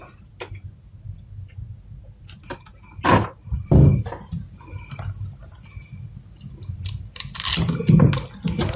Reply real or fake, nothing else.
real